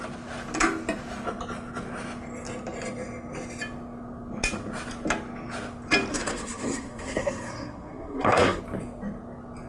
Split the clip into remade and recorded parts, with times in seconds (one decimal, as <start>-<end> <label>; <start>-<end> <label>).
0.0-6.1 recorded; 6.1-8.6 remade; 8.6-9.7 recorded